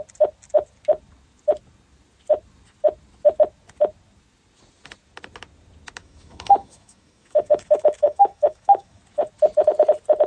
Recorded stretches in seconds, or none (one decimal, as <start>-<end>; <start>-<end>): 0.0-6.0; 9.0-10.3